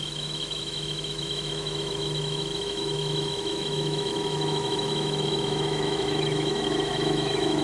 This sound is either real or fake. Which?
fake